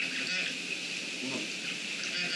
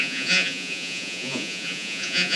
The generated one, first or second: second